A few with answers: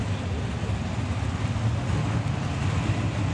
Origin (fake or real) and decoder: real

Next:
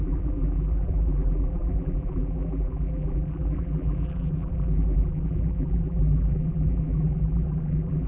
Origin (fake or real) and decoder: fake, vocoder, BigVGAN v2